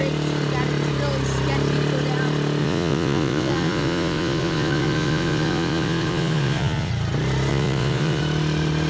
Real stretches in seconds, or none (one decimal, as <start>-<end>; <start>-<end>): 0.0-2.6; 6.9-7.5; 8.2-8.9